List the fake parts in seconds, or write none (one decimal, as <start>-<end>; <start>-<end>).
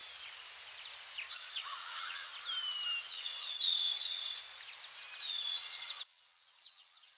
1.3-2.3; 3.1-4.4; 5.2-7.2